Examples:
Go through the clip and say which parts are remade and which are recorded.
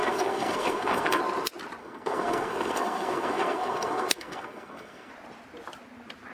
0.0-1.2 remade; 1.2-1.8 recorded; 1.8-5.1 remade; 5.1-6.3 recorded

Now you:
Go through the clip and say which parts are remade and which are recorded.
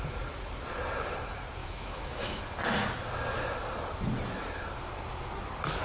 0.0-1.6 recorded; 1.6-2.4 remade; 2.4-5.8 recorded